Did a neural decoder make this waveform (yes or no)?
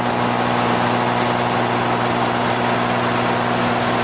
no